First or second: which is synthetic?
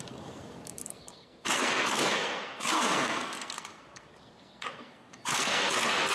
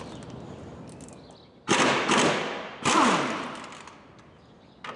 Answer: first